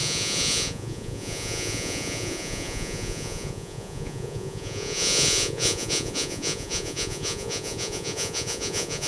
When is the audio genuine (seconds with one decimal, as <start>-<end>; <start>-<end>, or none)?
none